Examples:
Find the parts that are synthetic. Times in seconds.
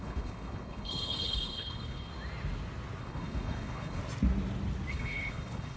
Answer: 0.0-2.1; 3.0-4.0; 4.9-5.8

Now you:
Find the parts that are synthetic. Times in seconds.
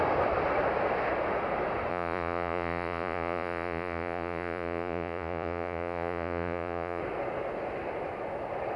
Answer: 1.9-7.0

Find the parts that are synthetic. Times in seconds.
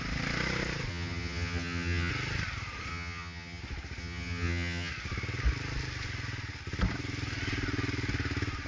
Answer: 0.9-2.1; 2.9-3.6; 4.0-4.9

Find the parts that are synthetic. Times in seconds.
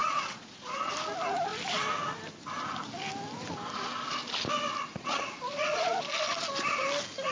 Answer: 0.0-0.9; 4.9-6.0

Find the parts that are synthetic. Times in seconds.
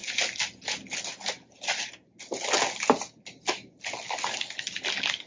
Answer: none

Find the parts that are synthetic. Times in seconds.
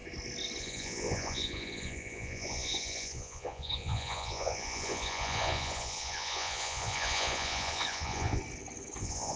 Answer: 0.6-8.4; 9.0-9.4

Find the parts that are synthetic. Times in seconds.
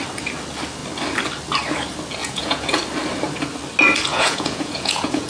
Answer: 2.2-2.8; 4.1-5.3